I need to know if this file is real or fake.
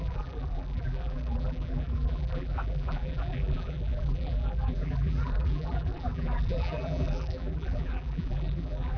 fake